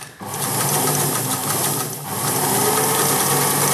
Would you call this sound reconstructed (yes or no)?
no